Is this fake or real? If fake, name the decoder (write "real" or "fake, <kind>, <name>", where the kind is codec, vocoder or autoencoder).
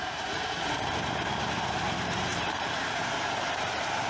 fake, vocoder, BigVGAN v2